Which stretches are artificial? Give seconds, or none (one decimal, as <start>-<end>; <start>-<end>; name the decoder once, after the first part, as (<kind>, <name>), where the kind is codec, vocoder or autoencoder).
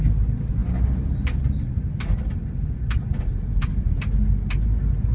none